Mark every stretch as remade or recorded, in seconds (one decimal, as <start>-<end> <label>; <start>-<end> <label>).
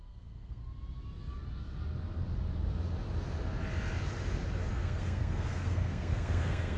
0.0-0.6 remade; 0.6-4.7 recorded; 4.7-6.8 remade